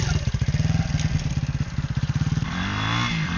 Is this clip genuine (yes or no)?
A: yes